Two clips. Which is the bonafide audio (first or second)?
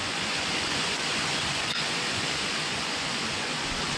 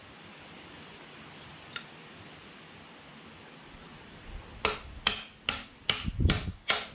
second